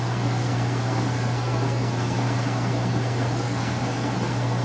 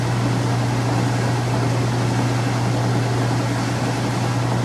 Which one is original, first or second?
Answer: second